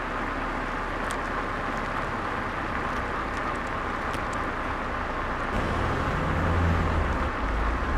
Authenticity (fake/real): real